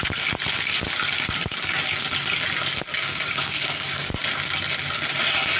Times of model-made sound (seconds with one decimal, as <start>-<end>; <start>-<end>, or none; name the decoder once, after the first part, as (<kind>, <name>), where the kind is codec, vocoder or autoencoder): 2.9-4.1 (codec, DAC)